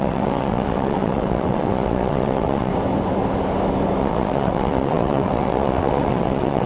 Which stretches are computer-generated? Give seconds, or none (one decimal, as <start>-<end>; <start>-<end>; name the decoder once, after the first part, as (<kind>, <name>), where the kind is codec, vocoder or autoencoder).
0.0-2.7 (vocoder, WaveNeXt); 4.0-6.7